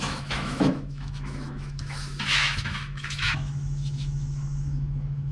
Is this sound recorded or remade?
remade